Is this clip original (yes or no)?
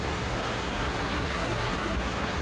no